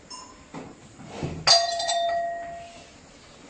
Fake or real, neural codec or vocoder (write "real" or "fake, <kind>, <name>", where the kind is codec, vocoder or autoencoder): real